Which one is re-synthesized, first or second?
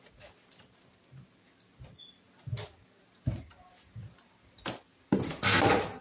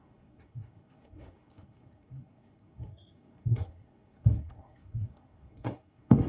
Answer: second